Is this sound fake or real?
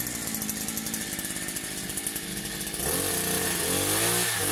real